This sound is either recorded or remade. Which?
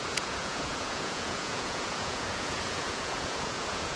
remade